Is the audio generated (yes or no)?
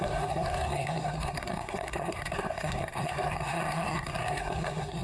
yes